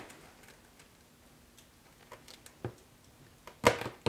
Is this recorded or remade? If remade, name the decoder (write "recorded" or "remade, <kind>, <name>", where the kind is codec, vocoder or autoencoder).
recorded